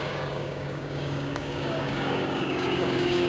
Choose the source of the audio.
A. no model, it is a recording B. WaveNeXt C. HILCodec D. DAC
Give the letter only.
D